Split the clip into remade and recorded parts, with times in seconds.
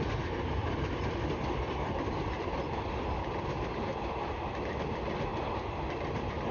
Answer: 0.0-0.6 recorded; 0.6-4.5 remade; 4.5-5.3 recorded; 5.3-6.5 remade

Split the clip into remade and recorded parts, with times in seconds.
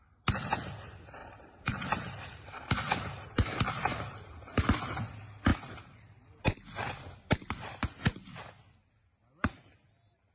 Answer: 0.0-1.2 recorded; 1.2-2.9 remade; 2.9-3.9 recorded; 3.9-4.6 remade; 4.6-5.5 recorded; 5.5-6.4 remade; 6.4-10.3 recorded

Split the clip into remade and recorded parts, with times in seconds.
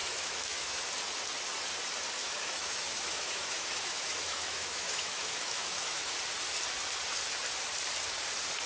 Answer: 0.0-0.8 remade; 0.8-2.2 recorded; 2.2-6.1 remade; 6.1-8.7 recorded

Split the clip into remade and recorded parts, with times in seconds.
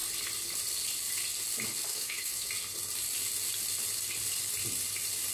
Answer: 0.0-1.9 recorded; 1.9-2.5 remade; 2.5-5.3 recorded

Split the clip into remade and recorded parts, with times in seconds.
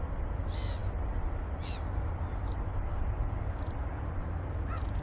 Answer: 0.0-5.0 recorded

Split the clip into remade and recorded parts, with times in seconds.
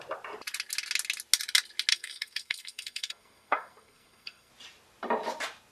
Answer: 0.0-1.9 recorded; 1.9-4.5 remade; 4.5-5.7 recorded